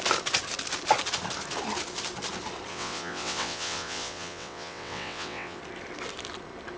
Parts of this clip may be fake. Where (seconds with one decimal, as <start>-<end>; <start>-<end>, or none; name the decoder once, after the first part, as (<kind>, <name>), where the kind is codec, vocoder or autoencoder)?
2.7-5.6 (vocoder, WaveNeXt)